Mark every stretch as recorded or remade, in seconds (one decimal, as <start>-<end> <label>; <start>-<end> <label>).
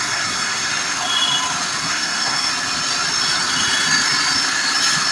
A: 0.0-0.7 remade; 0.7-1.8 recorded; 1.8-2.5 remade; 2.5-5.1 recorded